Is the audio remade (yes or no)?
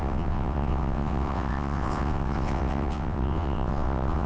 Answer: yes